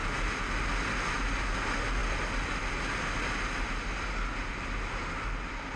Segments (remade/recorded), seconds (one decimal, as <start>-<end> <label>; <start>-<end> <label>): 0.0-5.8 recorded